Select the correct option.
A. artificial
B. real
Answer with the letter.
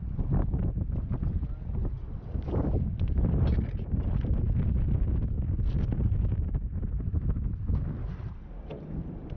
B